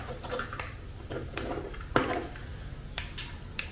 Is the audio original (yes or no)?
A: yes